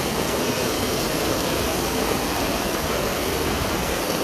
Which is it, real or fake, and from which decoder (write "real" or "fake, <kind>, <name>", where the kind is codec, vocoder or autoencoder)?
fake, codec, SNAC